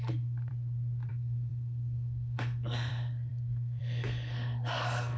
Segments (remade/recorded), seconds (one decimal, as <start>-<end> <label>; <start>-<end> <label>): 0.0-0.5 remade; 0.5-1.1 recorded; 1.1-5.2 remade